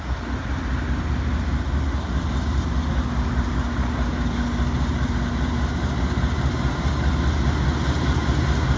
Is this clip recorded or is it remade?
recorded